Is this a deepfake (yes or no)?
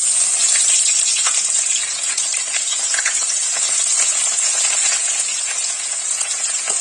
yes